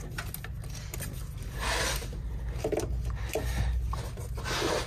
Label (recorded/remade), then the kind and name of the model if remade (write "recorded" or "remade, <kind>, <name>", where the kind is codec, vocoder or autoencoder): recorded